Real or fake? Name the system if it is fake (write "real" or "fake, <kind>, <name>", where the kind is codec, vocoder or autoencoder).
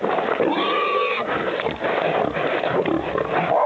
real